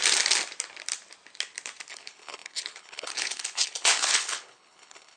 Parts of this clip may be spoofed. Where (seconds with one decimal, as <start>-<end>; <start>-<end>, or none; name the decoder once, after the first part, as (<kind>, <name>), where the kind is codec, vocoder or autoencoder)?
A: 1.9-5.2 (codec, HILCodec)